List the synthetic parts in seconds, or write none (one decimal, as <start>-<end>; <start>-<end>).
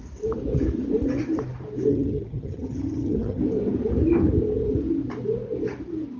1.9-3.4